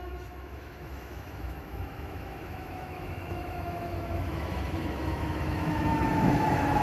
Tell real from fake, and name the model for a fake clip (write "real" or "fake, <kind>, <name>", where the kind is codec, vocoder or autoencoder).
fake, autoencoder, DAC-VAE